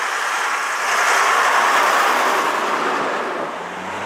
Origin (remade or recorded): recorded